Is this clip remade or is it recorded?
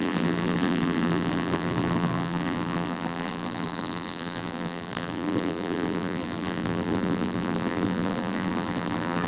remade